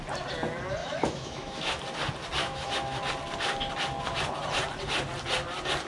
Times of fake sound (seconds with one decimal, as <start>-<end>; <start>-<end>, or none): 0.8-1.8; 2.4-3.1